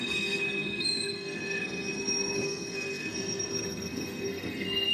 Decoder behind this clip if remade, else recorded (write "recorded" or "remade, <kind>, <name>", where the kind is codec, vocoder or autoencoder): remade, codec, SNAC